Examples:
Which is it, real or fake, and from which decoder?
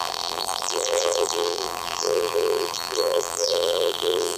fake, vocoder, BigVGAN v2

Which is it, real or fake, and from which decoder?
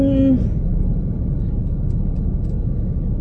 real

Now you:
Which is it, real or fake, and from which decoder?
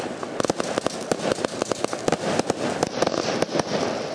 real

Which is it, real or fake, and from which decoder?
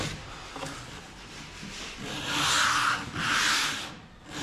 real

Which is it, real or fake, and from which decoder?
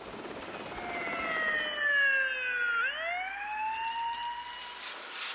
real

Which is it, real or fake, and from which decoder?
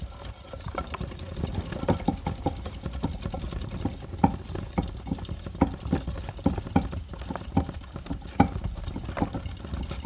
real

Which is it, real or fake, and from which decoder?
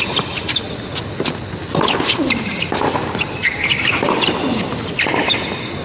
real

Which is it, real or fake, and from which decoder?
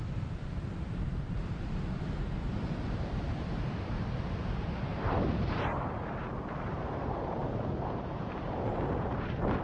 fake, vocoder, BigVGAN v2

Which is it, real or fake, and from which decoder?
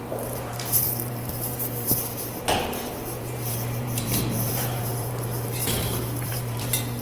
fake, vocoder, BigVGAN v2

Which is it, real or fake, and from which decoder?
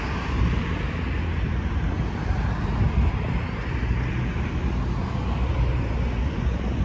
real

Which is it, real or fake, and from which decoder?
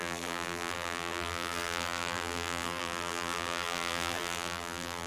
fake, vocoder, BigVGAN v2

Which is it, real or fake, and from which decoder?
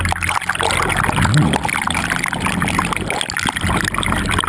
real